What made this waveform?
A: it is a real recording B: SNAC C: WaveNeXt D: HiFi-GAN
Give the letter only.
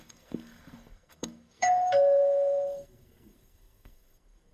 B